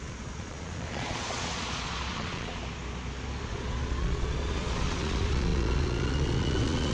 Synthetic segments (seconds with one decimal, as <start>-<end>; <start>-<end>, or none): 0.0-2.6; 3.5-6.9